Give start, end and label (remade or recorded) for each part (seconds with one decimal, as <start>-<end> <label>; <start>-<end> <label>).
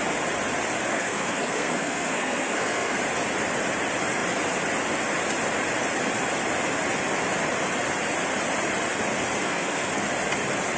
0.0-0.9 recorded; 0.9-3.0 remade; 3.0-9.4 recorded; 9.4-9.9 remade; 9.9-10.8 recorded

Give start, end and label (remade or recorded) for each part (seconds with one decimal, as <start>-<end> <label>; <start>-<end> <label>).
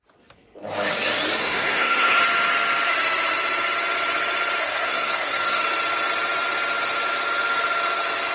0.0-1.4 recorded; 1.4-2.2 remade; 2.2-4.6 recorded; 4.6-5.6 remade; 5.6-8.3 recorded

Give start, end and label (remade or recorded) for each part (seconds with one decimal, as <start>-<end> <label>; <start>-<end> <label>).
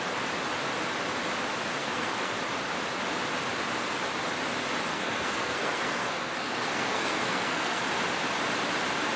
0.0-1.8 recorded; 1.8-2.3 remade; 2.3-4.9 recorded; 4.9-7.8 remade; 7.8-9.2 recorded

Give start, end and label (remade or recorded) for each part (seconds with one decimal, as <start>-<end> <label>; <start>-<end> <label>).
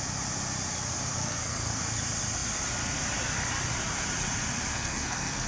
0.0-1.2 recorded; 1.2-1.8 remade; 1.8-4.7 recorded; 4.7-5.5 remade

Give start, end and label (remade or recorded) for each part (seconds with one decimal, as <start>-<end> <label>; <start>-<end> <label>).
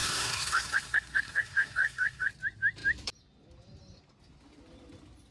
0.0-2.3 remade; 2.3-5.3 recorded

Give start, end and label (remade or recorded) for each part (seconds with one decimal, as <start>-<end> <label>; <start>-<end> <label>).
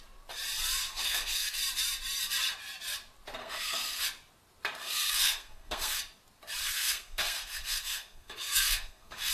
0.0-0.8 recorded; 0.8-1.6 remade; 1.6-3.4 recorded; 3.4-4.0 remade; 4.0-4.8 recorded; 4.8-6.0 remade; 6.0-6.6 recorded; 6.6-9.3 remade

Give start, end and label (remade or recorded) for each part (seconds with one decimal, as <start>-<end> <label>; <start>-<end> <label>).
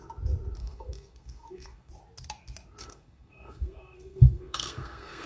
0.0-0.6 recorded; 0.6-1.9 remade; 1.9-2.8 recorded; 2.8-5.3 remade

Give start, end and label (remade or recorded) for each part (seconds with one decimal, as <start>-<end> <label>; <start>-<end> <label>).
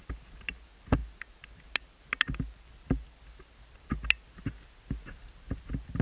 0.0-6.0 recorded